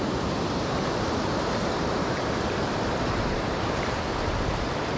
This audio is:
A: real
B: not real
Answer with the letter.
B